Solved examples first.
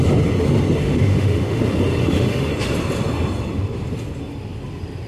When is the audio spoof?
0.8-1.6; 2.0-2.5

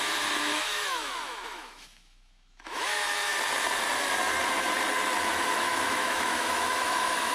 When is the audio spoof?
0.0-3.3; 5.3-7.3

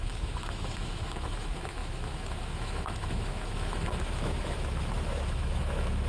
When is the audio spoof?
0.0-6.1

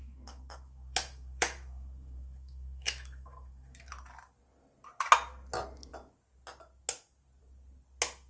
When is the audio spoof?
0.0-3.9

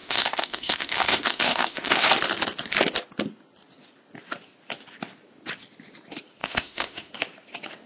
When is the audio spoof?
0.0-2.1; 6.4-7.1

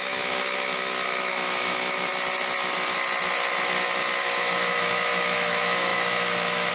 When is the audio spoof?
0.0-2.1; 4.2-6.7

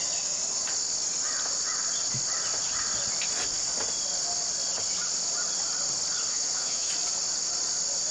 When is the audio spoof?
6.3-6.9